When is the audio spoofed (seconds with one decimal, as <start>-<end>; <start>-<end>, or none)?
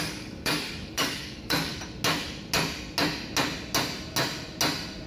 0.0-1.7